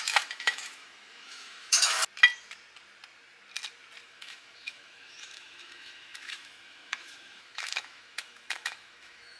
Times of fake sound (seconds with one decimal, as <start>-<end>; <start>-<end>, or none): 0.0-2.0; 4.0-9.4